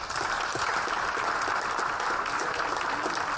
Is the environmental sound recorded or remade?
recorded